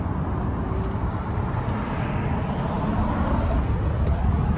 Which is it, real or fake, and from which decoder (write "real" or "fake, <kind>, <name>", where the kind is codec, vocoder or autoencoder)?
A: real